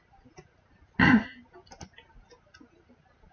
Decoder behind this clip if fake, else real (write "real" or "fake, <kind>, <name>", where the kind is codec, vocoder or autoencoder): real